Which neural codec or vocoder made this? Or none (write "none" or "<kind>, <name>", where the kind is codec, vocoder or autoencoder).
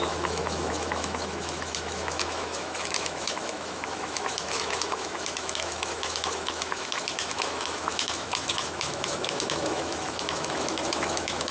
autoencoder, DAC-VAE